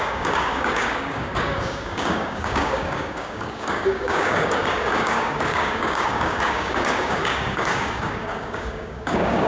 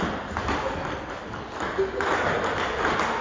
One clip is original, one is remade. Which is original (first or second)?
second